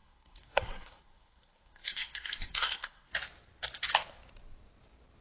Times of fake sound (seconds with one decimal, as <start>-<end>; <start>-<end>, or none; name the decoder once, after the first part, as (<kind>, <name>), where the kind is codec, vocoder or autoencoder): 0.0-3.1 (codec, SNAC)